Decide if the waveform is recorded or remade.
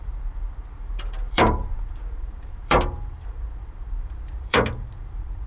remade